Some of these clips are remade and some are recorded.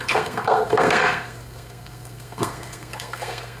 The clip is remade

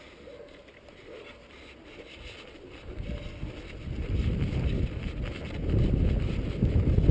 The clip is recorded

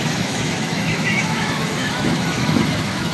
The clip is remade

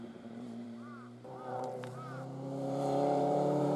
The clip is remade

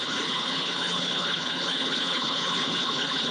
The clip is remade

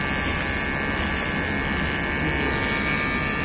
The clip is recorded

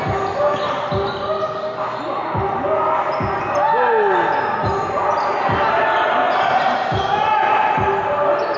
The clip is recorded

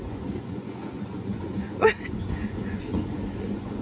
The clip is remade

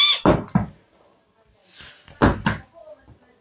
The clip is recorded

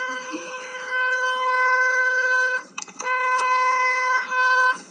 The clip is remade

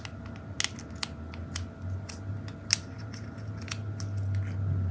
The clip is recorded